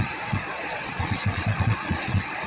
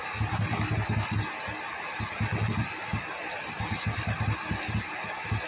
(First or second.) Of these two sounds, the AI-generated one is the first